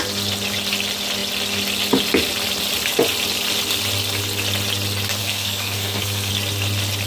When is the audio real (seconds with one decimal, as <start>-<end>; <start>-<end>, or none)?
0.0-5.2; 6.3-7.1